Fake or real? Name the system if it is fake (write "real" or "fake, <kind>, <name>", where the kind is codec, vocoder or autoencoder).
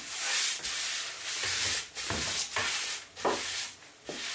real